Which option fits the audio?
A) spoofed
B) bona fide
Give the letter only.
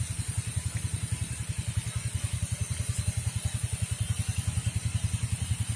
B